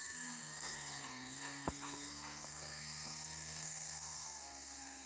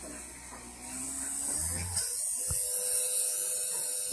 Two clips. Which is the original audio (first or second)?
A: second